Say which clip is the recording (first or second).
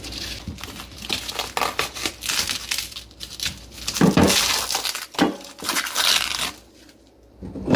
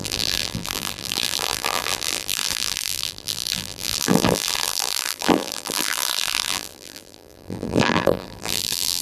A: first